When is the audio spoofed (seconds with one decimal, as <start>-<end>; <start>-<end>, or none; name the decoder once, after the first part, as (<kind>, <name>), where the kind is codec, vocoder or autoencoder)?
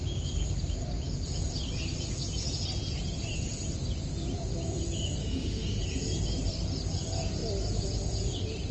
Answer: 5.2-5.8 (autoencoder, DAC-VAE)